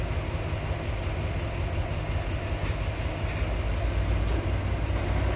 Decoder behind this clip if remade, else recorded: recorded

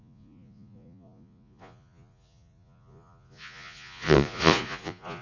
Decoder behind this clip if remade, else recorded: remade, vocoder, Vocos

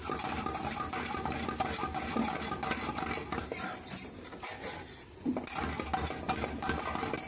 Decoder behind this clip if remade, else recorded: recorded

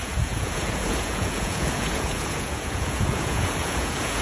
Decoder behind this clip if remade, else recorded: remade, vocoder, Vocos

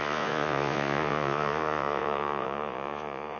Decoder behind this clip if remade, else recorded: remade, vocoder, Vocos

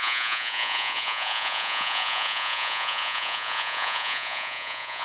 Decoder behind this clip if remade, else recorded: remade, vocoder, Vocos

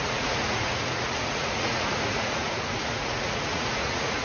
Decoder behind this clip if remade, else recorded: remade, vocoder, Vocos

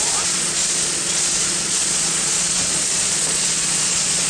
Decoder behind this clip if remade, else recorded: remade, vocoder, Vocos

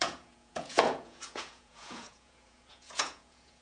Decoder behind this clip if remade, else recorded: remade, vocoder, Vocos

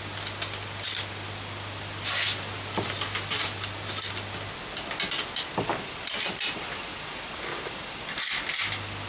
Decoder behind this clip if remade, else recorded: recorded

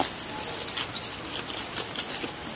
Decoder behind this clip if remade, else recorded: recorded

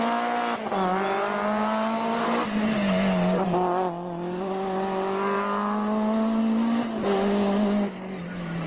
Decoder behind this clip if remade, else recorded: recorded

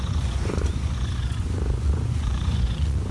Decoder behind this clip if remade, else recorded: remade, vocoder, Vocos